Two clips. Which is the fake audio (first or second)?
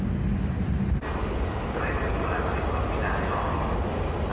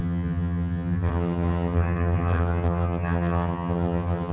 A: second